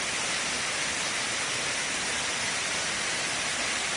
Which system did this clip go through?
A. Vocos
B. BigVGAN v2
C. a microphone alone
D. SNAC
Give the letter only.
B